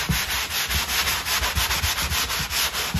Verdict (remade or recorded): recorded